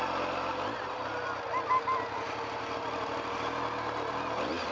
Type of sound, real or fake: real